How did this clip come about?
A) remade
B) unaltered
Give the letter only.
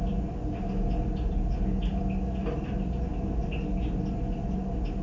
B